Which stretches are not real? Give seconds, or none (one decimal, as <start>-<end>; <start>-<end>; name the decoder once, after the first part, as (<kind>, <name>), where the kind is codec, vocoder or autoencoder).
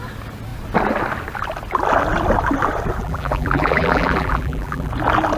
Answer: 3.0-4.9 (vocoder, BigVGAN v2)